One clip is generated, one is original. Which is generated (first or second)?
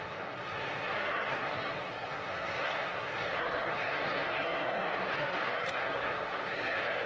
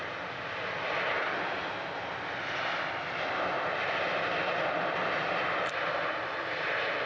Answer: first